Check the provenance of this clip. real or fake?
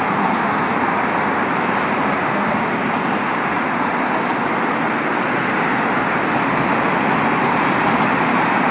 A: real